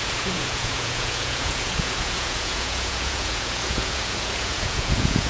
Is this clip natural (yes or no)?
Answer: no